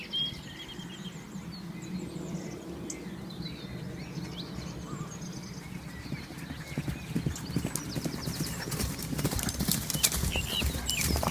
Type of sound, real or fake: real